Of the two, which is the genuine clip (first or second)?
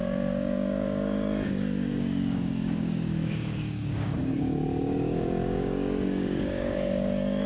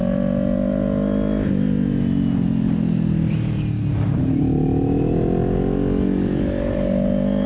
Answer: second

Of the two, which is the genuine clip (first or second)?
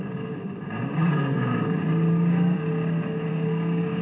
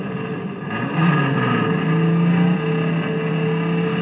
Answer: second